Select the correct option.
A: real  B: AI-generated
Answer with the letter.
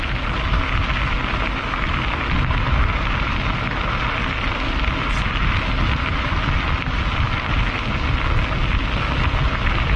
A